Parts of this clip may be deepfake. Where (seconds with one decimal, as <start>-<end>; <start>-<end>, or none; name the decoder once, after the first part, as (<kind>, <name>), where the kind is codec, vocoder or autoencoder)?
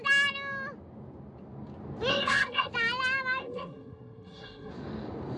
2.1-2.7 (codec, SNAC); 3.4-4.7